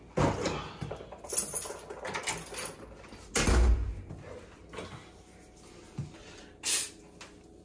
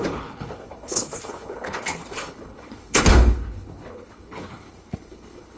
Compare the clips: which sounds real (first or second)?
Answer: first